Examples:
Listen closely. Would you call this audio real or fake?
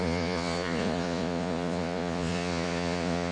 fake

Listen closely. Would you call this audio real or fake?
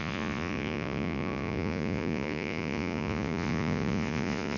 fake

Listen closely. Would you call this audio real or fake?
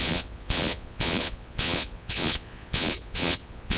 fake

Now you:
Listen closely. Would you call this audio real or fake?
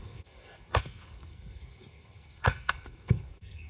fake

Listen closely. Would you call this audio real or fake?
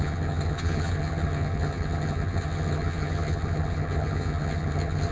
fake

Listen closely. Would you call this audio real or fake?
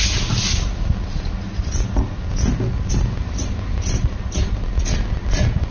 real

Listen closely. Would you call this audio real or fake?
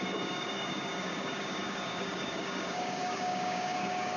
fake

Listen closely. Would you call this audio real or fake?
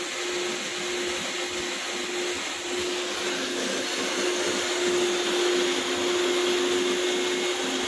real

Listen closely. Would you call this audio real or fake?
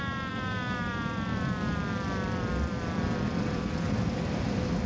fake